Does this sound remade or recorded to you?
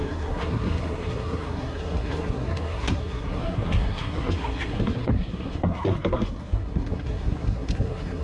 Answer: remade